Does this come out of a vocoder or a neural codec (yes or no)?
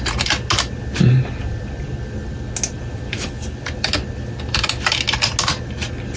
no